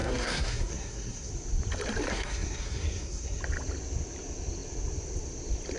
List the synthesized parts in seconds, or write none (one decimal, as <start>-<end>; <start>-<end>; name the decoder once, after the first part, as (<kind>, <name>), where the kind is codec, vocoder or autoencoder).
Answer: 0.0-1.3 (codec, SNAC); 2.1-3.4